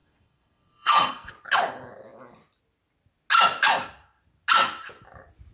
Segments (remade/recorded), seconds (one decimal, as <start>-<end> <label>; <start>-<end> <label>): 0.0-1.3 remade; 1.3-5.5 recorded